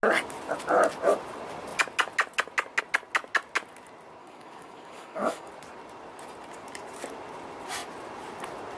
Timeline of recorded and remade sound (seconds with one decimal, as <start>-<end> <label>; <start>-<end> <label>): 0.0-4.2 recorded; 4.2-5.5 remade; 5.5-8.8 recorded